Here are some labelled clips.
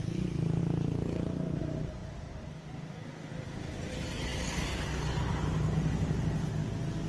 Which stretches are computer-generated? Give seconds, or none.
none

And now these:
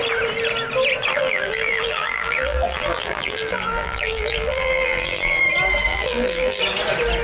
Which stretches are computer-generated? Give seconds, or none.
1.1-5.4; 5.9-6.6

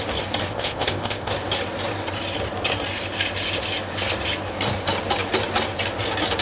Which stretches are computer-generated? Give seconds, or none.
0.5-1.3

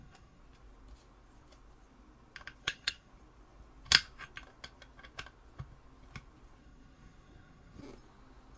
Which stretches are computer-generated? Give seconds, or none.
0.0-0.4; 2.6-3.1; 6.6-7.8

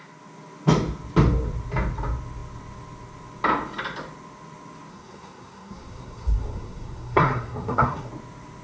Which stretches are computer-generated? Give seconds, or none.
4.9-8.1

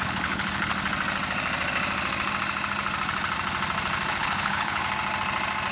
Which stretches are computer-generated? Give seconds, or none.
0.0-0.7; 4.1-4.8

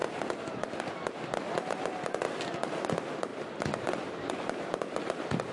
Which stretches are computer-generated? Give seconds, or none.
none